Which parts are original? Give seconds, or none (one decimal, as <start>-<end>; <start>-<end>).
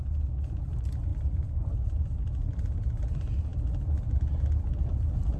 0.0-1.1; 2.0-5.4